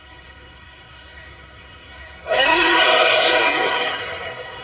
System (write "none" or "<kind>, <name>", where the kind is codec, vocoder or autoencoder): codec, SNAC